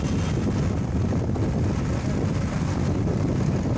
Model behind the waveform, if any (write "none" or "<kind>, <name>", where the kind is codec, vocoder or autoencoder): none